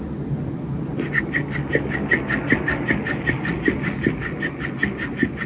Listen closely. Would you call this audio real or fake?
real